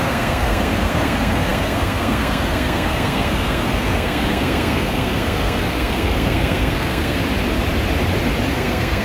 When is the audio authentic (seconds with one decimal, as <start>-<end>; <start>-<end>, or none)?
7.2-8.5